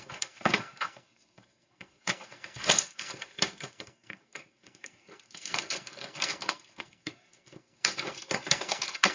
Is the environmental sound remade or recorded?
remade